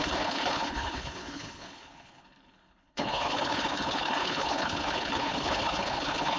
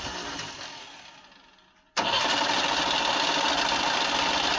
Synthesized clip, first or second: first